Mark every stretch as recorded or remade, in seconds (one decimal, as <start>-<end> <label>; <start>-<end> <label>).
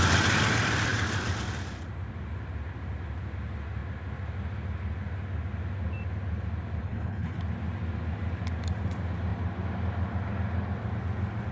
0.0-6.8 recorded; 6.8-7.4 remade; 7.4-11.5 recorded